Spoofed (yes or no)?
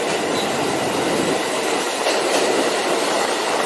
no